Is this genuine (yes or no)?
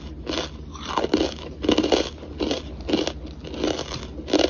yes